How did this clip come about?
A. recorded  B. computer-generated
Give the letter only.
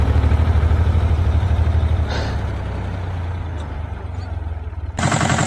B